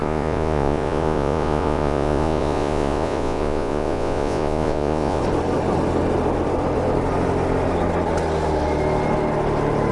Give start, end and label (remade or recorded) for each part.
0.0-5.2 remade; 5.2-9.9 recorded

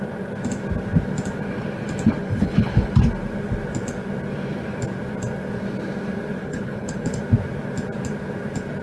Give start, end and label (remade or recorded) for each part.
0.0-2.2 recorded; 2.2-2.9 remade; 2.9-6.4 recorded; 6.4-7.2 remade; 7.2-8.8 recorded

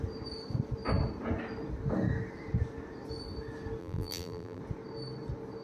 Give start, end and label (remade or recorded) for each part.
0.0-3.8 recorded; 3.8-4.6 remade; 4.6-5.6 recorded

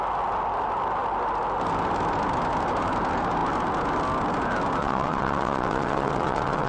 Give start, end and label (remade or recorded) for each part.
0.0-4.8 recorded; 4.8-6.7 remade

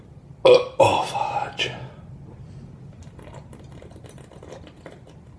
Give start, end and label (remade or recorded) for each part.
0.0-5.4 recorded

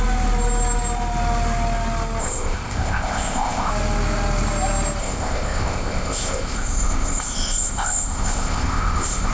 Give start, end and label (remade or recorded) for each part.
0.0-2.2 recorded; 2.2-3.7 remade; 3.7-5.0 recorded; 5.0-9.3 remade